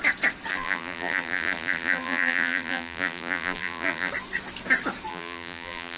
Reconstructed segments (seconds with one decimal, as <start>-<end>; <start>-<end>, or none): 0.5-4.1; 5.1-6.0